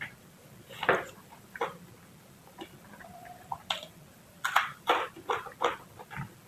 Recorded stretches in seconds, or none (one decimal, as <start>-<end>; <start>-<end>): 0.0-6.5